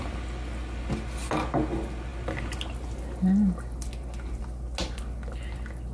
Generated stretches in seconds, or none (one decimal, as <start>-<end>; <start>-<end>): none